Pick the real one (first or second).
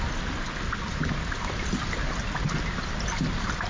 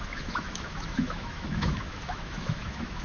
first